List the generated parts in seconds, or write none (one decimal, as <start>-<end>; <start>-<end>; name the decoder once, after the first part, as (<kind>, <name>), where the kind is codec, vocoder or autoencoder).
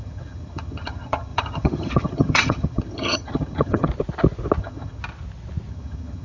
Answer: 0.0-3.9 (vocoder, HiFi-GAN); 4.6-5.0; 5.7-6.2